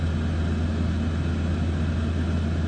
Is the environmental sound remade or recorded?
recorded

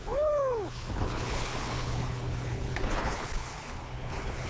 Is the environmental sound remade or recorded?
remade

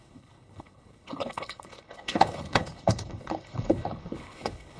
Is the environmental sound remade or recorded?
remade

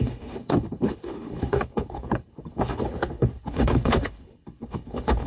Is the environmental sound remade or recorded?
remade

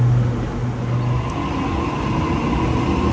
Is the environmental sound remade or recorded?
recorded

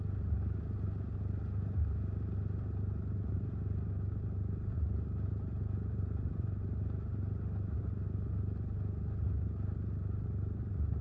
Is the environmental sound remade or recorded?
recorded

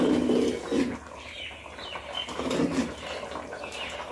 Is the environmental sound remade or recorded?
recorded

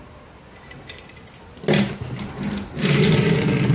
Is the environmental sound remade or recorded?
recorded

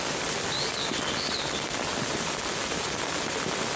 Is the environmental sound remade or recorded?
recorded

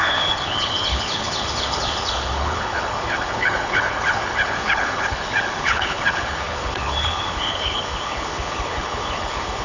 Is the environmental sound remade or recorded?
remade